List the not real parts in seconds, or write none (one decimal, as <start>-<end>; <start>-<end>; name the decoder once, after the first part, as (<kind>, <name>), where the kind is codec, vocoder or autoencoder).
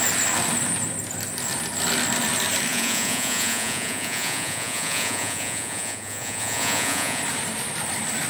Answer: 2.7-7.2 (vocoder, Vocos)